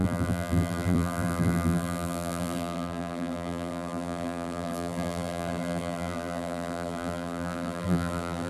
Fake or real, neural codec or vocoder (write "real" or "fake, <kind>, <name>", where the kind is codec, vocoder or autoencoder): fake, vocoder, BigVGAN v2